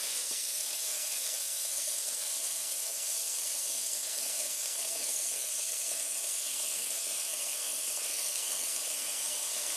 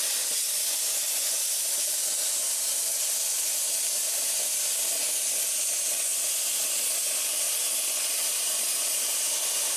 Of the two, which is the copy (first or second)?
first